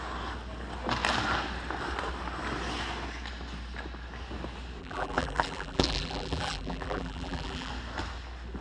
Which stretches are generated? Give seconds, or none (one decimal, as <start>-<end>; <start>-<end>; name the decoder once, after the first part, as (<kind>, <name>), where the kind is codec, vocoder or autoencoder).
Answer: 4.8-7.7 (vocoder, BigVGAN v2)